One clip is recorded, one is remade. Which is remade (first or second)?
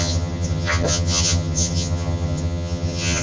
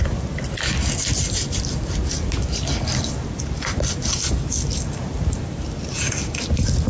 first